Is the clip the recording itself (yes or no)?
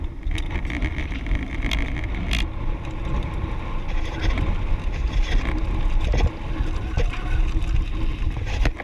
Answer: yes